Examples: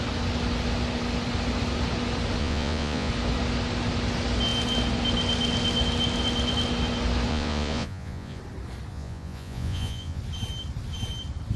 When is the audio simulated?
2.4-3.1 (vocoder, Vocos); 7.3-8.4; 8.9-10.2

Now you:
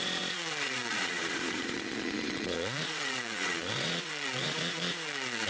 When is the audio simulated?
0.0-5.5 (vocoder, Vocos)

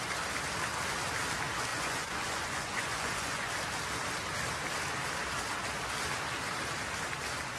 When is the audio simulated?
1.7-3.5 (vocoder, Vocos)

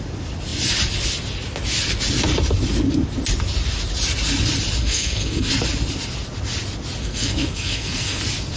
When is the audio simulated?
4.8-5.5 (codec, SNAC); 7.0-8.2